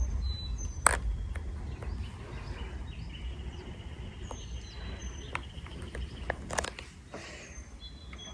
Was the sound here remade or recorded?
recorded